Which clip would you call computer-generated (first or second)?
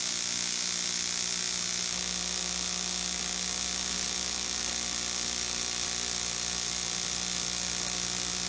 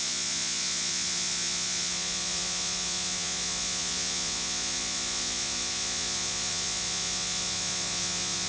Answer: second